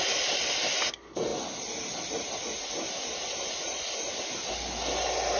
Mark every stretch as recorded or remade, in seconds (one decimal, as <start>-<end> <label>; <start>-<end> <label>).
0.0-5.4 recorded